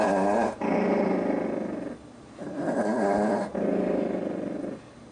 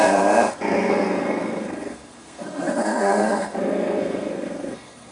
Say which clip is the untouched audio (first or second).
first